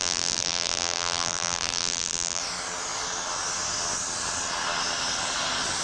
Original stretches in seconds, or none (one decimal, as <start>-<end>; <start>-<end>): 2.4-5.8